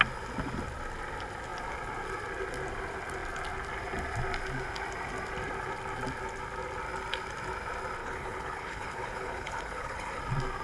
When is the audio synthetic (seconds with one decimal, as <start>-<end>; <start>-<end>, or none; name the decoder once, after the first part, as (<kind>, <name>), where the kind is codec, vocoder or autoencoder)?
8.0-10.2 (codec, HILCodec)